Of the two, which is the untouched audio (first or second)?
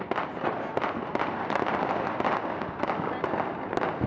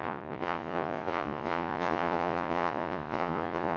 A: first